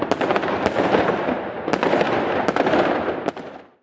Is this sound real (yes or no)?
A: yes